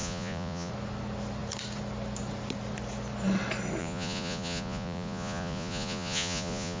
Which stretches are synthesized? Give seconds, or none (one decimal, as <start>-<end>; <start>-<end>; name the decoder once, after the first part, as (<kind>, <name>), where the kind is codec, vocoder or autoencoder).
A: 0.0-0.7 (vocoder, Vocos); 3.8-6.8